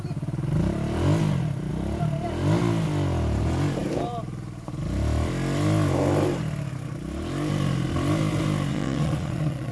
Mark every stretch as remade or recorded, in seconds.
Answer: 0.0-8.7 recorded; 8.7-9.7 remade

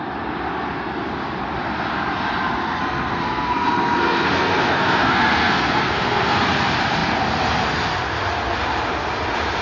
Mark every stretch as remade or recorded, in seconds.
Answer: 0.0-2.6 recorded; 2.6-6.4 remade; 6.4-9.6 recorded

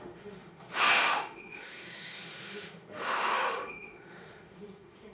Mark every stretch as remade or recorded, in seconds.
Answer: 0.0-5.1 remade

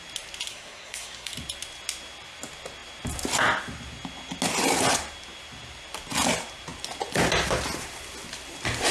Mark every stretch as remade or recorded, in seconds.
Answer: 0.0-0.5 recorded; 0.5-1.3 remade; 1.3-8.9 recorded

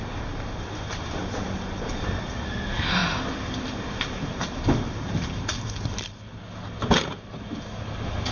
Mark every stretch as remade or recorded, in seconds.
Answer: 0.0-8.3 recorded

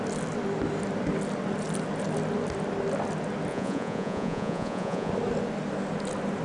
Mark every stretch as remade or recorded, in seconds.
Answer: 0.0-3.5 recorded; 3.5-5.1 remade; 5.1-6.4 recorded